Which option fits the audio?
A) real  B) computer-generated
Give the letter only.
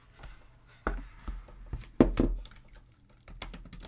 A